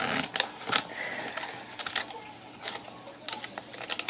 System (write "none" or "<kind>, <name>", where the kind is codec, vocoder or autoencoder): none